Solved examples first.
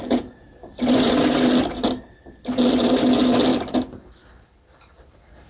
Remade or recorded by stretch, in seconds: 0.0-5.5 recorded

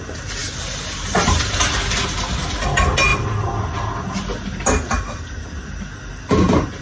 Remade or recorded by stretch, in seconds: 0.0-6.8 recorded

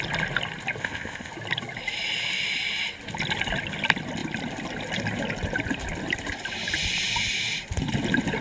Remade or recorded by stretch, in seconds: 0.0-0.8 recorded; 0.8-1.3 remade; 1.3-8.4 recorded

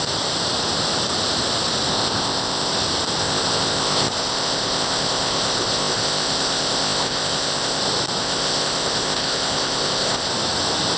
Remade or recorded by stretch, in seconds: 0.0-1.9 recorded; 1.9-2.7 remade; 2.7-3.2 recorded; 3.2-7.8 remade; 7.8-8.2 recorded; 8.2-10.3 remade; 10.3-11.0 recorded

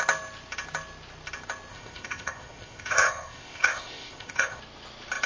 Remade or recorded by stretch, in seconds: 0.0-1.7 recorded; 1.7-4.6 remade; 4.6-5.3 recorded

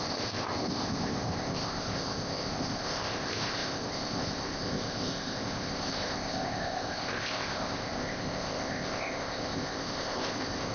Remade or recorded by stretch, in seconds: 0.0-10.7 remade